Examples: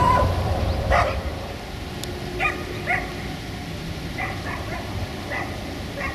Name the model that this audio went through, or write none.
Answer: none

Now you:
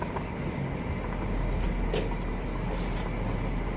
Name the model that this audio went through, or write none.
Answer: none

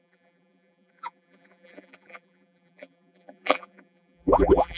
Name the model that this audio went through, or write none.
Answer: vocoder, BigVGAN v2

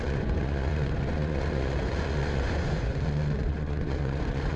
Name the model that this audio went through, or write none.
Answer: vocoder, Vocos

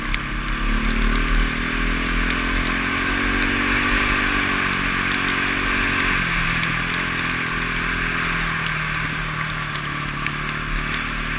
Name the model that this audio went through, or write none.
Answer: none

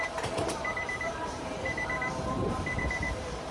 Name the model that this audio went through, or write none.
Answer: vocoder, BigVGAN v2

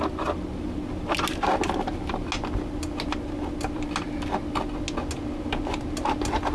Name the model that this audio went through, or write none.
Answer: none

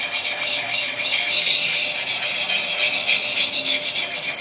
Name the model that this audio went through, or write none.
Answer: none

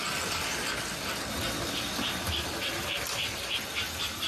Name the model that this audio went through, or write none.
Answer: none